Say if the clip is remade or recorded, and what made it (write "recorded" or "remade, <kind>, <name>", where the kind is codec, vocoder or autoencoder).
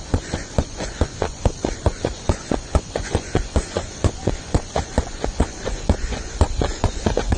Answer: remade, vocoder, Vocos